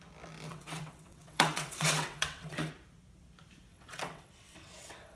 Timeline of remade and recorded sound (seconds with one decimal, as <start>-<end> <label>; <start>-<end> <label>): 0.0-0.5 recorded; 0.5-2.7 remade; 2.7-3.7 recorded; 3.7-5.2 remade